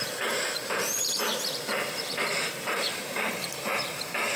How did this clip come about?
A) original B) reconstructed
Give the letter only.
B